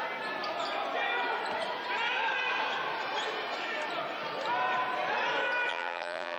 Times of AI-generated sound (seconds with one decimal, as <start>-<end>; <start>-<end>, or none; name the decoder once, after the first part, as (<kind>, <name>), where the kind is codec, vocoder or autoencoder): 5.7-6.4 (vocoder, BigVGAN v2)